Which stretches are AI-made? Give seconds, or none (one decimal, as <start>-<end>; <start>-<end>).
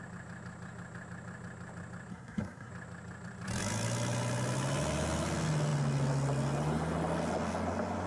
2.1-2.7